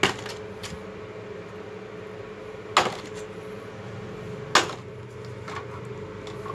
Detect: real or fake real